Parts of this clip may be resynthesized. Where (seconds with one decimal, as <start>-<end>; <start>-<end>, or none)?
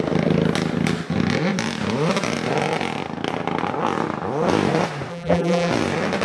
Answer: 5.1-5.7